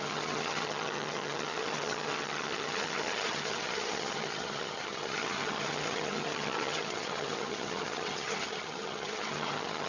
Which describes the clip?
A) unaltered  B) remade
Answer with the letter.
B